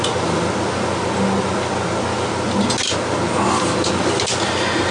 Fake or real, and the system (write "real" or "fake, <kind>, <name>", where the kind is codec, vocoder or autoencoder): real